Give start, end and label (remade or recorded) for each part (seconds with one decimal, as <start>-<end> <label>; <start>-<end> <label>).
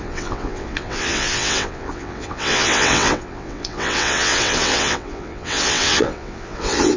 0.0-7.0 remade